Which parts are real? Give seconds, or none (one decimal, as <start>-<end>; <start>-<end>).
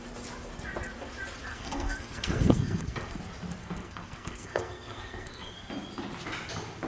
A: 0.0-1.5; 3.2-3.6; 5.7-6.9